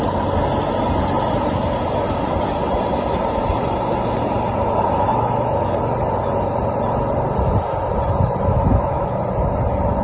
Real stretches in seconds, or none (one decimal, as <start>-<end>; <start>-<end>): 0.0-5.1; 5.8-8.5; 9.2-10.0